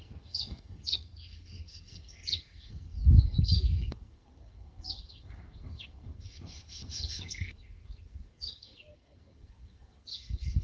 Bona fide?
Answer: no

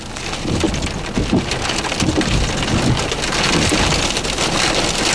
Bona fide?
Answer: yes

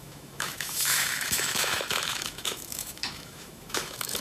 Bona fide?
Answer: no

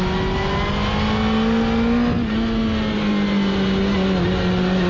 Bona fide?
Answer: yes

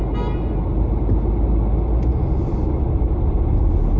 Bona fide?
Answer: yes